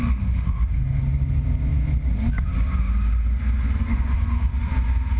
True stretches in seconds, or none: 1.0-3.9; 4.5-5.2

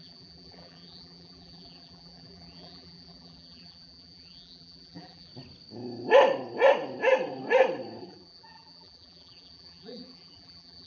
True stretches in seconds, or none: 5.3-8.0

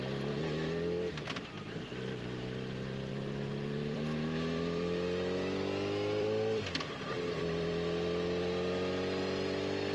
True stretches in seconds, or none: 0.0-3.1; 6.7-9.9

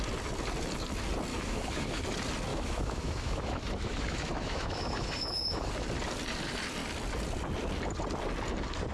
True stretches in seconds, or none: 0.0-1.3; 2.0-2.5; 5.7-8.9

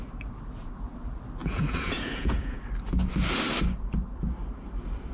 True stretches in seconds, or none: 0.0-1.4; 2.6-5.1